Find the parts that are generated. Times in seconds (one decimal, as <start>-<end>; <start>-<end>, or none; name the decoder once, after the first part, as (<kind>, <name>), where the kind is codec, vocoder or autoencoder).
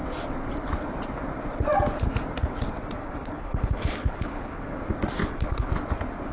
3.0-4.8 (codec, HILCodec); 5.2-5.7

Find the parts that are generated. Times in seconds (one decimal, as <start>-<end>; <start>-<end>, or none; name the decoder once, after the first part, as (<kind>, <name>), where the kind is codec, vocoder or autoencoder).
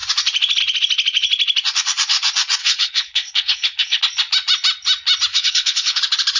2.6-4.0 (codec, HILCodec); 5.3-6.0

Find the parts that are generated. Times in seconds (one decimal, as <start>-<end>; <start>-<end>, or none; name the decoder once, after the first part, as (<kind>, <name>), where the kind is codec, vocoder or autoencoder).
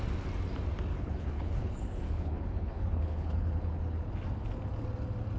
0.9-4.1 (codec, HILCodec)